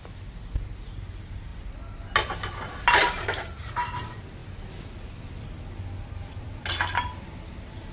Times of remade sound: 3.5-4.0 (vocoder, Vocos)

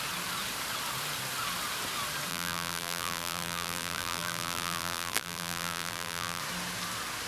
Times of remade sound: 2.3-6.4 (vocoder, BigVGAN v2)

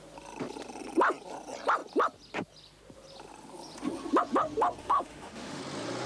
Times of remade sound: 4.8-5.6 (autoencoder, DAC-VAE)

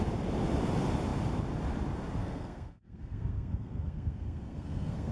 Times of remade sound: 2.2-5.1 (codec, SNAC)

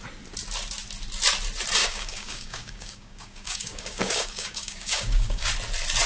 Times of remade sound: 1.8-5.5 (codec, DAC)